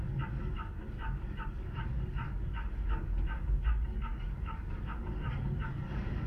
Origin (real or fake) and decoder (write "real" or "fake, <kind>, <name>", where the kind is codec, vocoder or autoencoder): fake, codec, DAC